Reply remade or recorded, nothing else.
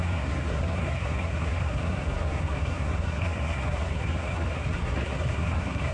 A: remade